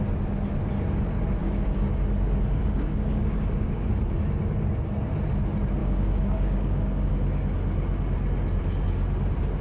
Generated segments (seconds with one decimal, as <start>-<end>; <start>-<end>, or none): 1.4-1.9; 2.6-3.9; 5.8-7.1

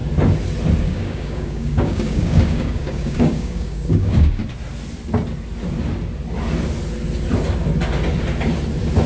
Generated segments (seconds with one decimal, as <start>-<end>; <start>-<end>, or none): 0.8-4.4

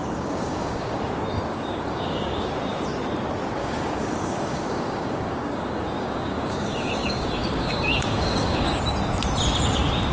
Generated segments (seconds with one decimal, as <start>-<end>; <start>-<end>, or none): 0.0-1.0; 1.5-2.5; 3.6-8.8

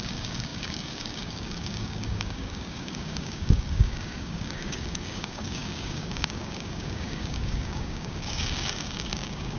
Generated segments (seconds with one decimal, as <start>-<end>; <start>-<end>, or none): 0.0-9.6

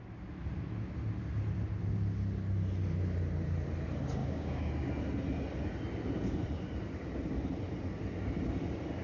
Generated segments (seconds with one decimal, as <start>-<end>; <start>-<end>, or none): 4.2-4.7

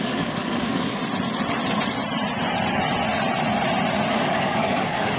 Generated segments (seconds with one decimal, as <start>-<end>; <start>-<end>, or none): 0.0-1.0; 4.1-5.2

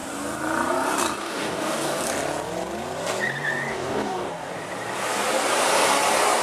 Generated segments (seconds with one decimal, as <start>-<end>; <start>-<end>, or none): 1.2-2.0; 3.7-4.5

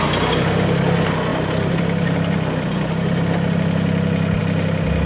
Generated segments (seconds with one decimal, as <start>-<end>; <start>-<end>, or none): none